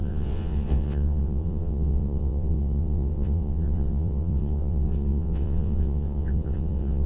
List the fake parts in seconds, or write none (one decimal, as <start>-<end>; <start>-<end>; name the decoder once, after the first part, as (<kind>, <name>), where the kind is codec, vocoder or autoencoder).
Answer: 0.0-7.1 (vocoder, WaveNeXt)